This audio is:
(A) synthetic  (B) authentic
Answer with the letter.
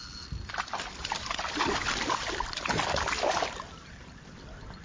B